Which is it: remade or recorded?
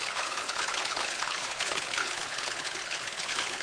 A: remade